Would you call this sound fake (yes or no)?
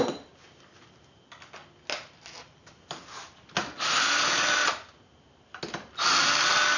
no